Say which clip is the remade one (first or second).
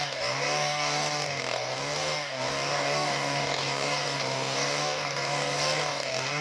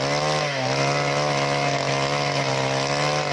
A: first